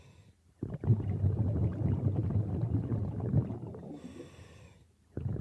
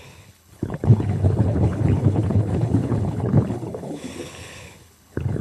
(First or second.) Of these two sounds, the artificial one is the second